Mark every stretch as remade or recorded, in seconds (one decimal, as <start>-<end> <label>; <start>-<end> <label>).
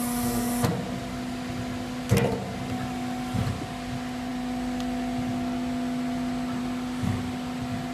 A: 0.0-7.9 recorded